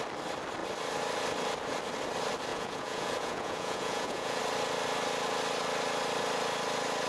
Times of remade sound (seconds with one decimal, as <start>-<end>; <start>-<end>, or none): 2.5-4.4